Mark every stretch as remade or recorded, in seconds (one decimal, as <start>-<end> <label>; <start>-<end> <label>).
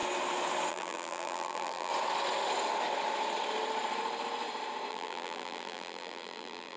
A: 0.0-0.7 recorded; 0.7-1.9 remade; 1.9-4.9 recorded; 4.9-6.8 remade